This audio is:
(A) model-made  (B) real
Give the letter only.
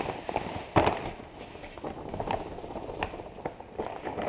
B